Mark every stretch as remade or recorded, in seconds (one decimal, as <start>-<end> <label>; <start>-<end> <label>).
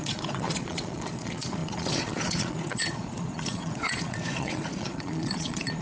0.0-5.8 remade